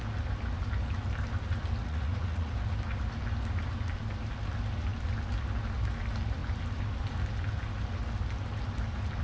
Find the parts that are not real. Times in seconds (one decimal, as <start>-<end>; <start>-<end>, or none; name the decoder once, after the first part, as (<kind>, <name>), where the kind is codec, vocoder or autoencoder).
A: 1.8-2.5 (vocoder, Vocos)

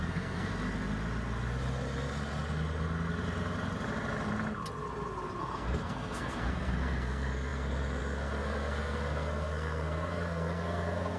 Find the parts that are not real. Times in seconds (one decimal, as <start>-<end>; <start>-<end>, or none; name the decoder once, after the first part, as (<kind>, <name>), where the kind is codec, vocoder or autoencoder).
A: 0.0-0.5 (codec, SNAC); 5.4-11.2

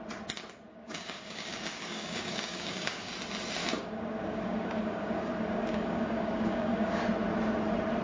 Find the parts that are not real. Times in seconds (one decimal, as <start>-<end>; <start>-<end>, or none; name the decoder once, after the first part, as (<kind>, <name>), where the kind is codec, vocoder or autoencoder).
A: 0.7-3.1 (codec, DAC); 3.6-7.0

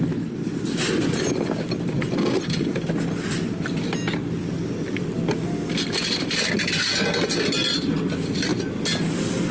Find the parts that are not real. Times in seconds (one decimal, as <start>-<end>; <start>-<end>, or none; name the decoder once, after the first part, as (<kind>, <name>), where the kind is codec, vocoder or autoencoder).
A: none